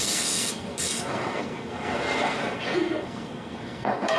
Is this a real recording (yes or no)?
no